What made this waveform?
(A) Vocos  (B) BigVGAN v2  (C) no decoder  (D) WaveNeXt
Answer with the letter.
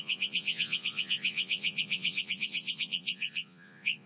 A